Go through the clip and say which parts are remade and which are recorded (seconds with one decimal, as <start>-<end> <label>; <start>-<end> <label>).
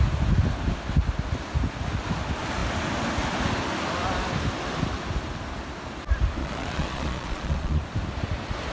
0.0-6.4 recorded; 6.4-7.8 remade; 7.8-8.7 recorded